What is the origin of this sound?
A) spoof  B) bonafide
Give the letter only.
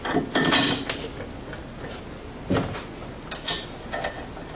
B